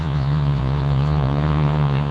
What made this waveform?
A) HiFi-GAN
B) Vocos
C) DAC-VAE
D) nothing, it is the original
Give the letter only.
B